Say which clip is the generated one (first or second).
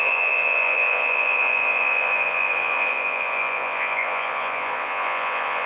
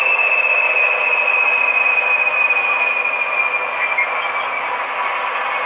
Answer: first